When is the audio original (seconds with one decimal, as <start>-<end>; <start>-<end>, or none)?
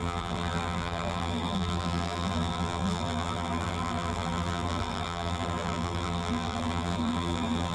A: none